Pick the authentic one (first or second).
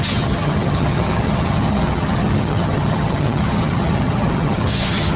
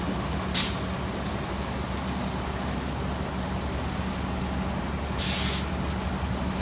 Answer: second